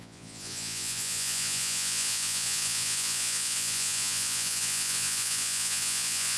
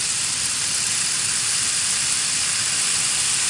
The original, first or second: second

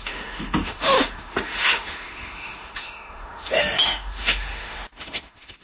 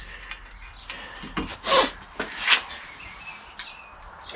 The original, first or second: second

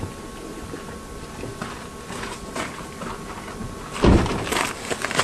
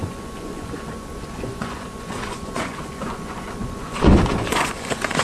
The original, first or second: first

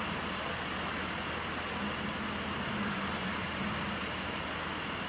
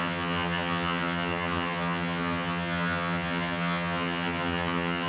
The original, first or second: first